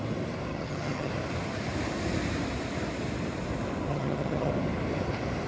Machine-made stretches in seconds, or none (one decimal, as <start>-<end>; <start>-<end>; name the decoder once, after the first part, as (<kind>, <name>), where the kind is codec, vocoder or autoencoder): 0.5-1.1 (vocoder, HiFi-GAN); 3.9-4.5